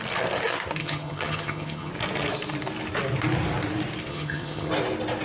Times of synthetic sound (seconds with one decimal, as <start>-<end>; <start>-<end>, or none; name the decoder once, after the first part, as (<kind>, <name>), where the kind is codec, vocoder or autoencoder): 0.8-1.9 (vocoder, HiFi-GAN); 4.1-4.7